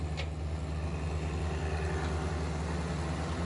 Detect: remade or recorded recorded